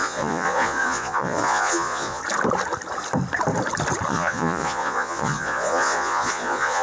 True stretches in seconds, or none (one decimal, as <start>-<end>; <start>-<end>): 2.2-4.1